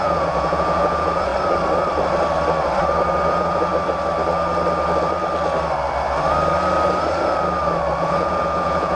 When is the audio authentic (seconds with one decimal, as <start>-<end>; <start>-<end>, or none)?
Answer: 1.3-3.2; 3.7-8.0